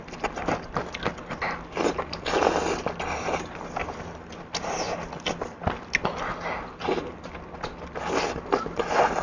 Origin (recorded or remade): recorded